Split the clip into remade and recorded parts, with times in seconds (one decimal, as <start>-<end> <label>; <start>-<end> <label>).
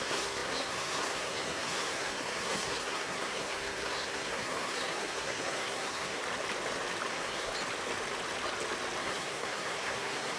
0.0-6.2 remade; 6.2-7.1 recorded; 7.1-7.5 remade; 7.5-9.0 recorded; 9.0-10.4 remade